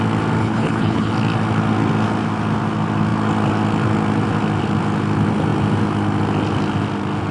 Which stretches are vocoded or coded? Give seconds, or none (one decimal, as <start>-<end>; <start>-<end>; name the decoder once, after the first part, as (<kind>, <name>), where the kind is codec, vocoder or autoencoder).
0.4-1.1 (codec, HILCodec)

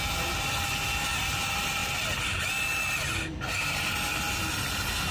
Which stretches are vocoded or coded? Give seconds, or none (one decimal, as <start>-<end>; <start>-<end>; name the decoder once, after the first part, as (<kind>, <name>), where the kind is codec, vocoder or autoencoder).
none

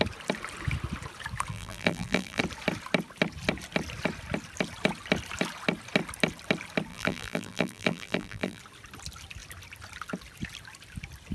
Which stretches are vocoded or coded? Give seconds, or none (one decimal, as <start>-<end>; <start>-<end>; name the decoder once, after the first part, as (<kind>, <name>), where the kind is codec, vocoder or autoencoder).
1.5-2.4 (vocoder, BigVGAN v2); 6.9-8.6

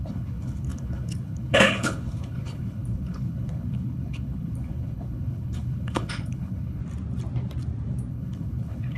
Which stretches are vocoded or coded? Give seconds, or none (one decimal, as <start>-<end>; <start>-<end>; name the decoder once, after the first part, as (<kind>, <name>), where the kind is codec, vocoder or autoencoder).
0.0-6.8 (codec, HILCodec); 8.1-9.0

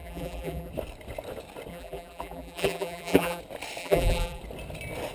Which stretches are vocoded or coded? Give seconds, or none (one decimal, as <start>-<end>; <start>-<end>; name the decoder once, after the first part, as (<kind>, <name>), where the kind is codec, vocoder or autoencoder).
0.0-0.7 (vocoder, BigVGAN v2); 1.7-3.4; 3.8-4.4

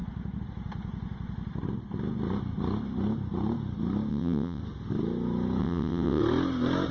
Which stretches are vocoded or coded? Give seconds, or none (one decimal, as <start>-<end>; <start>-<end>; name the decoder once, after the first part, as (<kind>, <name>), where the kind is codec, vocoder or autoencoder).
4.1-4.6 (vocoder, WaveNeXt); 5.6-6.2